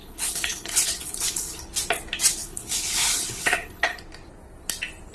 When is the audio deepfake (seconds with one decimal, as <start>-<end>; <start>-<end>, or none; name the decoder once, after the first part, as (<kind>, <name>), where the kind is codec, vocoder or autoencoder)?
0.0-1.6 (codec, HILCodec); 2.4-4.0